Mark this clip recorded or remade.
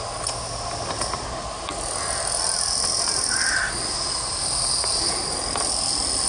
recorded